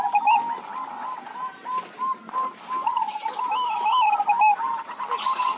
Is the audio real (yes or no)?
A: yes